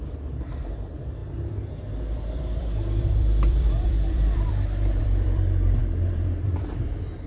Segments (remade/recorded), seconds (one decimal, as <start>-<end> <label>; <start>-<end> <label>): 0.0-7.3 remade